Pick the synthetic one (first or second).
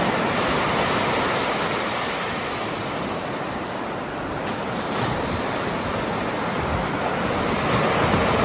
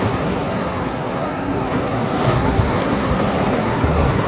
second